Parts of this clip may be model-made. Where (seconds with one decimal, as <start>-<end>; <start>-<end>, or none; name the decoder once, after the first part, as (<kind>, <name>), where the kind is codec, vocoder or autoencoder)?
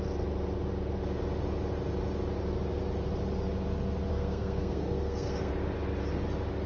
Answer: 4.1-5.5 (codec, SNAC)